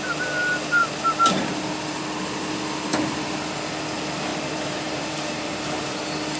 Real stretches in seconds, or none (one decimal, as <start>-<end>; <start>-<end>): 0.0-4.3; 5.9-6.4